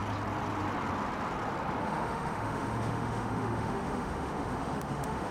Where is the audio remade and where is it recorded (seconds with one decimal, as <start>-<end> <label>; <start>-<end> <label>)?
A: 0.0-1.8 recorded; 1.8-5.3 remade